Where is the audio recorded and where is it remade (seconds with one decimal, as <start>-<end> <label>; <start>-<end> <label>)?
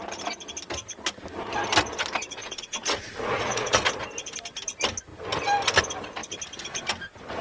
0.0-2.4 recorded; 2.4-3.8 remade; 3.8-7.4 recorded